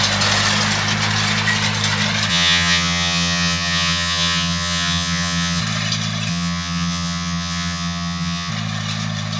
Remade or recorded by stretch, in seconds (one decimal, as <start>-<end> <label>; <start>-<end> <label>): 0.0-2.3 recorded; 2.3-5.6 remade; 5.6-6.3 recorded; 6.3-8.5 remade; 8.5-9.4 recorded